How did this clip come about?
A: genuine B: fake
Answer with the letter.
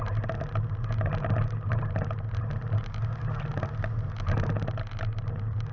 A